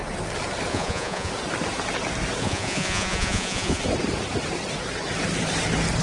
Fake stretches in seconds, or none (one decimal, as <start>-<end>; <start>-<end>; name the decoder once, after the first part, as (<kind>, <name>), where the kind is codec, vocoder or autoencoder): 0.7-1.3 (vocoder, Vocos); 2.4-3.8